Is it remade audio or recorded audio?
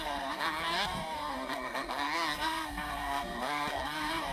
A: remade